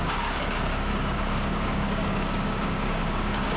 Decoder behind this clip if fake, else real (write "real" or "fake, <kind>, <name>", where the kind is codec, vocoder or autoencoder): fake, codec, DAC